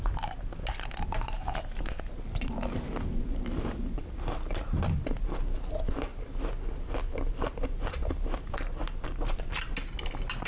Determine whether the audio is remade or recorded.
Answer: recorded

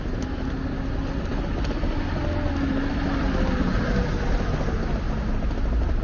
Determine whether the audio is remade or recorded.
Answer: recorded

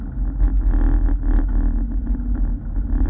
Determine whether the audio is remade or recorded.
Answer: recorded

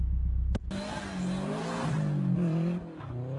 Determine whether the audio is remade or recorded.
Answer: recorded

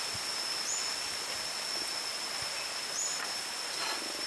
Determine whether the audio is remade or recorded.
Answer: recorded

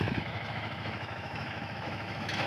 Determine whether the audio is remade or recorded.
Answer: remade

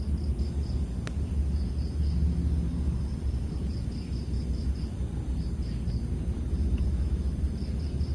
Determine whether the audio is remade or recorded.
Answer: recorded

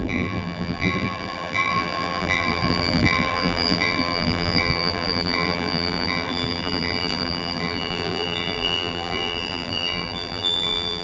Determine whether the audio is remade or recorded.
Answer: remade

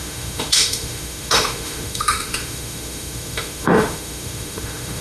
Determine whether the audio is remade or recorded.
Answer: remade